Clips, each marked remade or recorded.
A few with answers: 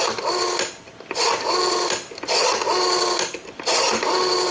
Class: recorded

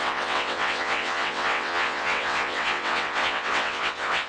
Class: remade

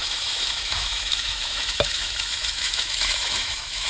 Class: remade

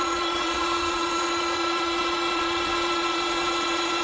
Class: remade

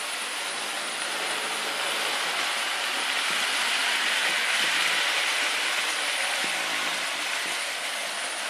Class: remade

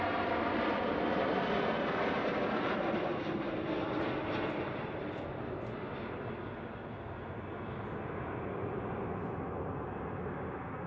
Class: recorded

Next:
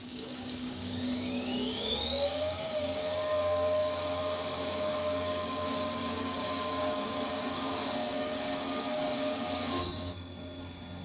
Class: remade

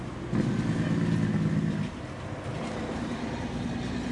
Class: recorded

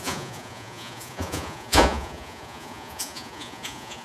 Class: remade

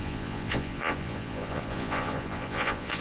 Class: remade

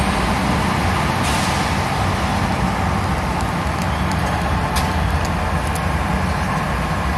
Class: recorded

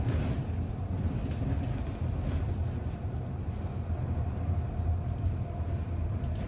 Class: recorded